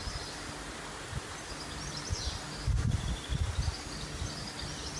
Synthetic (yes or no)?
no